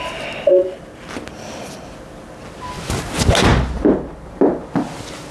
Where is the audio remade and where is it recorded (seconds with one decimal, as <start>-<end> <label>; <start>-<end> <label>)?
0.0-5.3 recorded